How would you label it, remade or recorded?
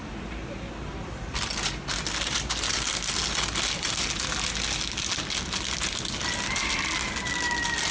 recorded